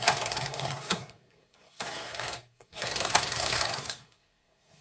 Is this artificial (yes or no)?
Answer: yes